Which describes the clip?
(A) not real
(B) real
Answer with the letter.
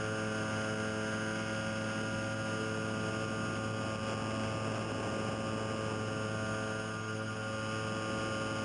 B